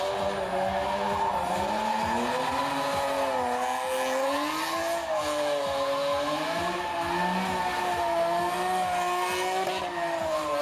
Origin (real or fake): real